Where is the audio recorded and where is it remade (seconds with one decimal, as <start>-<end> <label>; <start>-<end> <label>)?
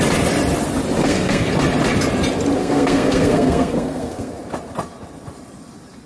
0.0-1.0 recorded; 1.0-1.5 remade; 1.5-2.6 recorded; 2.6-4.3 remade; 4.3-6.1 recorded